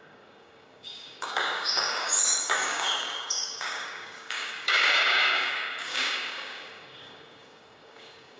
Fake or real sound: fake